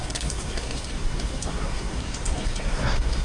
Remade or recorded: remade